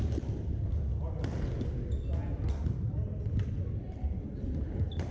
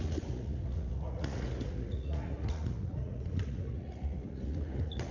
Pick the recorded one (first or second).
first